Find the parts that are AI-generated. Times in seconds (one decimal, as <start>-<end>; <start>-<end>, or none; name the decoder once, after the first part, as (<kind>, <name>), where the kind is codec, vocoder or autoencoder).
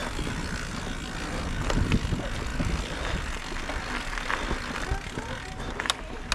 none